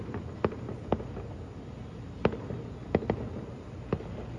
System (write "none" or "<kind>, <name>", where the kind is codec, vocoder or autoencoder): none